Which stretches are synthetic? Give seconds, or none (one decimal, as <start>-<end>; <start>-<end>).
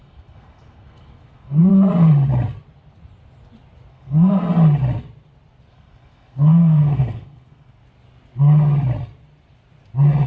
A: 0.0-1.7; 3.9-4.4; 5.7-7.8